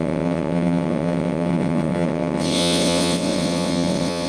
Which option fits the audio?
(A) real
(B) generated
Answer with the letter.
B